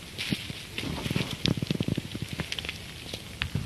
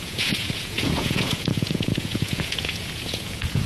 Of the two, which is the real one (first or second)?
first